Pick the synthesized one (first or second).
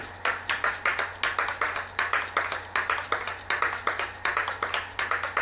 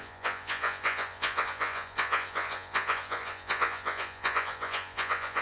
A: second